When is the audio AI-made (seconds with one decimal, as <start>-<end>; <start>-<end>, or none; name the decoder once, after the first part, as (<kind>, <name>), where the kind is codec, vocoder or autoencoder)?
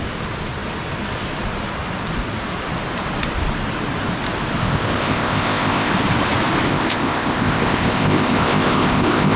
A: 4.6-5.9 (codec, ZipCodec); 6.7-9.4